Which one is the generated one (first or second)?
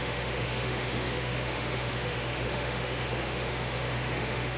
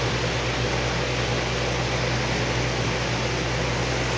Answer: first